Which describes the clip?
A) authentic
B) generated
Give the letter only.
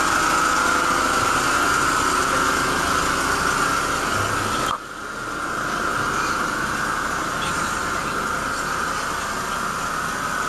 A